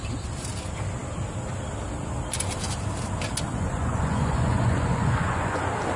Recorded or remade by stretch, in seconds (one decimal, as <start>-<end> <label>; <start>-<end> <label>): 0.0-3.5 recorded; 3.5-5.6 remade; 5.6-6.0 recorded